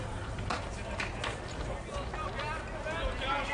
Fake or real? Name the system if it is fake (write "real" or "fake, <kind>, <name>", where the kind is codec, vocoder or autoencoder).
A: real